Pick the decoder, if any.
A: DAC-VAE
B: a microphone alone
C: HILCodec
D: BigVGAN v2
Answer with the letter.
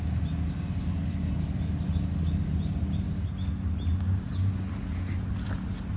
B